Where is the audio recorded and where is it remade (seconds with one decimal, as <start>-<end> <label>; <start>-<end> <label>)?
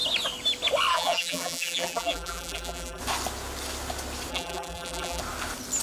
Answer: 0.0-0.9 recorded; 0.9-3.0 remade; 3.0-4.3 recorded; 4.3-5.2 remade; 5.2-5.8 recorded